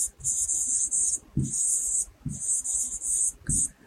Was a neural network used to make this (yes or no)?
no